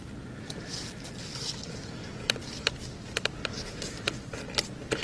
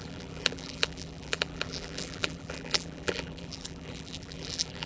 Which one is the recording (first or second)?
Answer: first